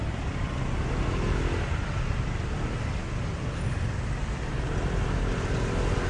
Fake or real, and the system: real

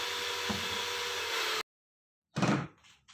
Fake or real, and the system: real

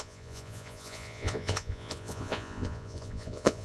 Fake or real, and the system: fake, vocoder, Vocos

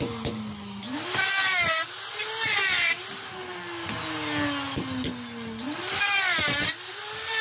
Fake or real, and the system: real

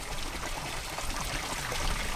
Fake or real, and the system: real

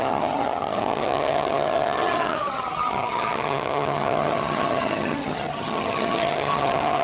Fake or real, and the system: fake, vocoder, HiFi-GAN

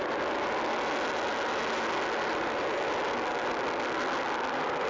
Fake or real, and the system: real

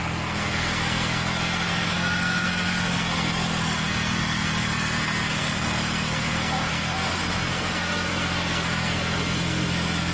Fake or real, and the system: fake, codec, SNAC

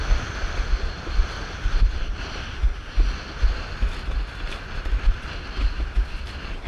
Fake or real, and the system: real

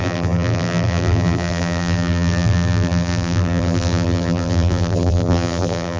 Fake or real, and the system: fake, vocoder, BigVGAN v2